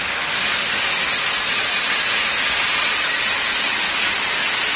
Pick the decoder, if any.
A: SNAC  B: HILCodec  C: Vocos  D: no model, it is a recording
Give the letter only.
D